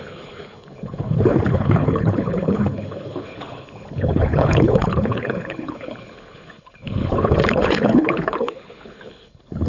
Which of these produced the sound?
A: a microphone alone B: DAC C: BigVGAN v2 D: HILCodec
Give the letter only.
D